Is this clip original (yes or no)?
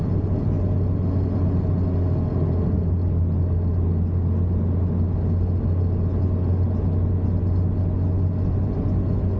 yes